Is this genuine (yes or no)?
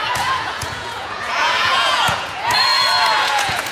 no